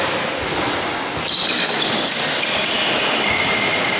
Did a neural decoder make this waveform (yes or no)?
yes